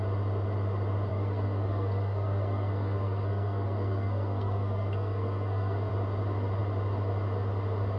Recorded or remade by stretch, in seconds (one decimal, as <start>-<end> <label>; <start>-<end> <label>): 0.0-1.1 recorded; 1.1-5.9 remade; 5.9-8.0 recorded